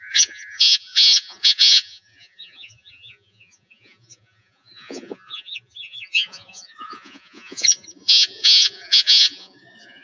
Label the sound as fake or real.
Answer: fake